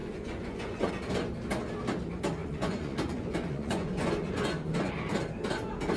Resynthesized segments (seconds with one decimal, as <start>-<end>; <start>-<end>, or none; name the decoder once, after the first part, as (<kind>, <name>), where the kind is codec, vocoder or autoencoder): 0.0-0.9 (vocoder, Vocos); 2.4-4.9